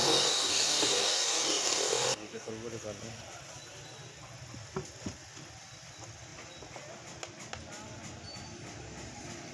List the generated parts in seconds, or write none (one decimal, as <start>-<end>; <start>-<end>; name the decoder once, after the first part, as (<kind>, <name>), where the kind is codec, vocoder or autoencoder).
0.0-2.5 (codec, DAC)